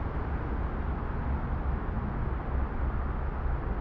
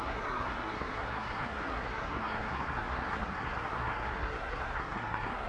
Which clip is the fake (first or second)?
second